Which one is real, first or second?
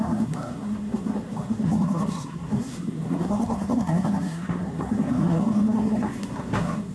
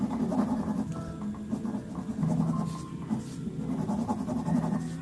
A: second